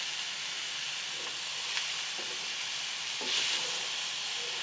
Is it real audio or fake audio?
real